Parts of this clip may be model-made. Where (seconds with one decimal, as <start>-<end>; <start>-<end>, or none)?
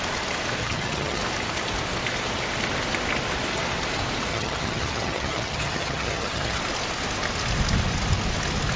0.6-1.2; 4.3-6.6